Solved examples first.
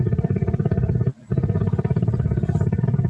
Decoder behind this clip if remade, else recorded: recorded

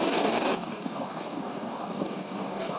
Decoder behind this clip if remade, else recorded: remade, codec, DAC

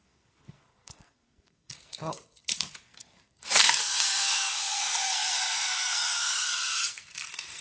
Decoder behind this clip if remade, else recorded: remade, codec, SNAC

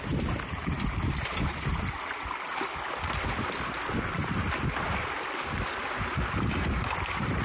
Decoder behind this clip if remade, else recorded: recorded